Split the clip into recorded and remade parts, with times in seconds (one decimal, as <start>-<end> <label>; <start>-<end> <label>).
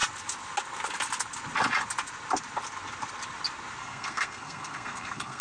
0.0-3.8 recorded; 3.8-5.4 remade